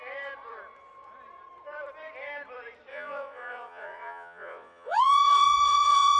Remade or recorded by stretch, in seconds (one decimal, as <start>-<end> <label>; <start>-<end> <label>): 0.0-2.9 recorded; 2.9-6.2 remade